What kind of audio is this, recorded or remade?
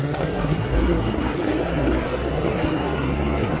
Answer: remade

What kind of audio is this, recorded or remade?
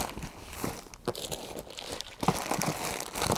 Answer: recorded